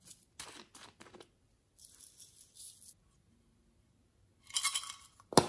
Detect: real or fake real